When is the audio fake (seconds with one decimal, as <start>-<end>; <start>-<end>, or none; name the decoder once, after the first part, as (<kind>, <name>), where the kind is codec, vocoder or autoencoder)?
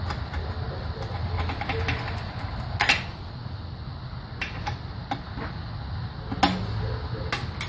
none